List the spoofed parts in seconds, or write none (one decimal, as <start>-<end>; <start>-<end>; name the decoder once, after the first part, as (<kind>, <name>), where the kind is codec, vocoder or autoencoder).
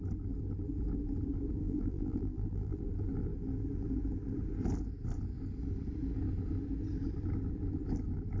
1.6-2.8 (vocoder, BigVGAN v2)